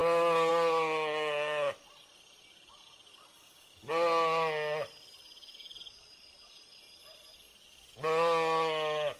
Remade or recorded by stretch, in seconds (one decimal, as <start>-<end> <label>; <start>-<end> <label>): 0.0-9.2 recorded